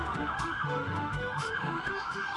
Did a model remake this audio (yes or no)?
yes